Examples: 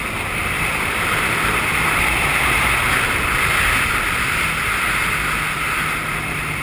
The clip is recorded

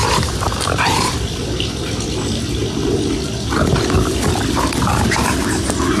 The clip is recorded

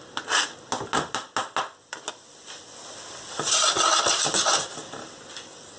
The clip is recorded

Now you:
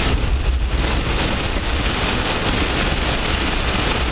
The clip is recorded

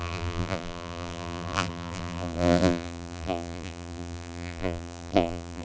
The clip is remade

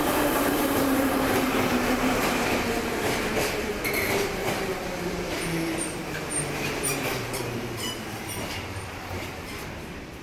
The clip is remade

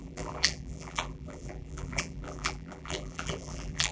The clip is remade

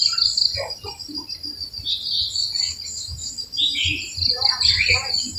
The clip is remade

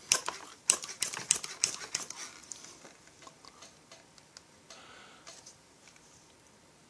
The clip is recorded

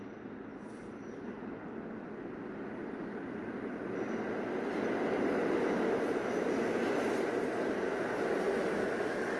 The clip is recorded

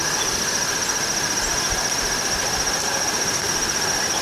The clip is recorded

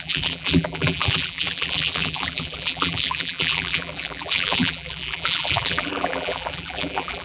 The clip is remade